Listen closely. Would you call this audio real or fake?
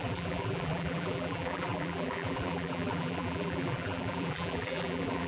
fake